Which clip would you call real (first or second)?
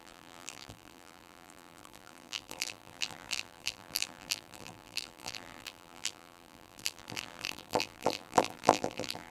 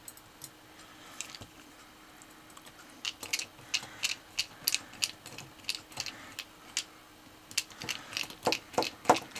second